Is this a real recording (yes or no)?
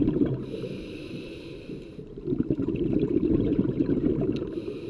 no